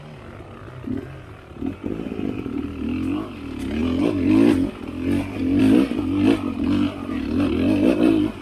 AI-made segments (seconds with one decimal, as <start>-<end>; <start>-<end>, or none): none

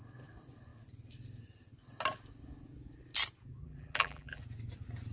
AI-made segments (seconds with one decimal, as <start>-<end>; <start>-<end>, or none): 3.6-4.4

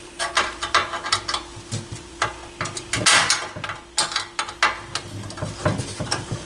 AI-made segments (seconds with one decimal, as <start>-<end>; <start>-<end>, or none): 0.0-0.8; 1.9-2.4; 5.8-6.5

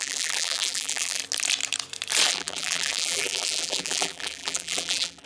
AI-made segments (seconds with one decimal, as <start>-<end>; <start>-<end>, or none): 0.0-1.2; 2.3-5.3

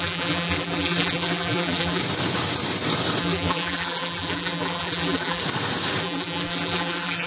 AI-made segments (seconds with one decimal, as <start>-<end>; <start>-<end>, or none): 0.0-2.0; 3.2-5.4; 6.0-7.3

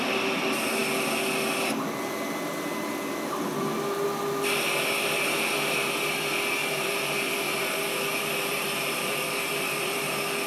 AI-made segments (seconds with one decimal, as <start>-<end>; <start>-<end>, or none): 6.6-10.1

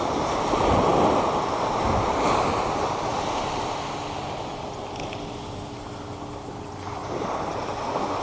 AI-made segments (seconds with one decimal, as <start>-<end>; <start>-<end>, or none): 7.0-7.7